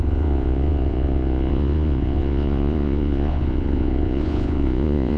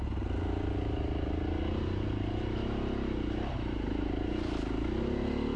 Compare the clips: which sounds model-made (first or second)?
first